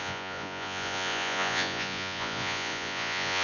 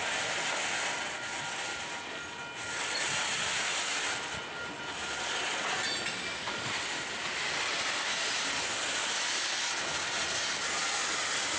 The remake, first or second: first